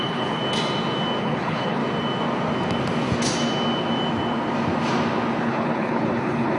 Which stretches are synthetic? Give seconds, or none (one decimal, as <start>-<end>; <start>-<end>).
0.0-0.4; 1.2-1.8; 5.4-6.6